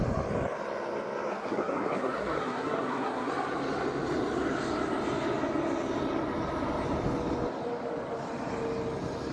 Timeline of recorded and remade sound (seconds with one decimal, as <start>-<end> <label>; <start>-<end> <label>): 0.0-1.3 recorded; 1.3-3.3 remade; 3.3-9.3 recorded